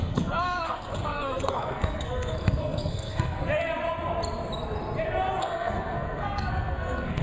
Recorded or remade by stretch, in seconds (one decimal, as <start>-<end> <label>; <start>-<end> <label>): 0.0-3.4 remade; 3.4-5.4 recorded; 5.4-7.2 remade